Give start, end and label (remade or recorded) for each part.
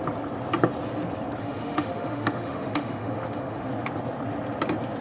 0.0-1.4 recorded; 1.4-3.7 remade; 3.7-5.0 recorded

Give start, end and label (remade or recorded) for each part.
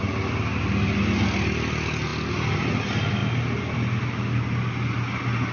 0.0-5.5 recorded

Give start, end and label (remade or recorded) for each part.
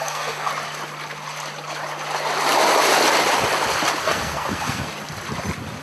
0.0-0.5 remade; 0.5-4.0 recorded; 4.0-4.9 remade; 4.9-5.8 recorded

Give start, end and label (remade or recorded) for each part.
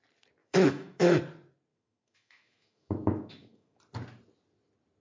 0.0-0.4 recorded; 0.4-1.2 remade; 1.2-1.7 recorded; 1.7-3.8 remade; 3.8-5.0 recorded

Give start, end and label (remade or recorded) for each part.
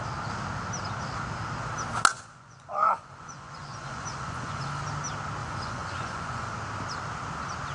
0.0-2.1 recorded; 2.1-4.8 remade; 4.8-5.4 recorded; 5.4-6.5 remade; 6.5-7.7 recorded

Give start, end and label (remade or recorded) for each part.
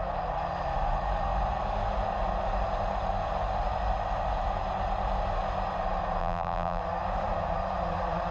0.0-6.2 recorded; 6.2-6.8 remade; 6.8-8.3 recorded